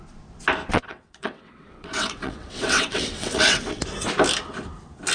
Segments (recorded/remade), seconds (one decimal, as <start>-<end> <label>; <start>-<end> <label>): 0.0-0.7 recorded; 0.7-3.8 remade; 3.8-5.1 recorded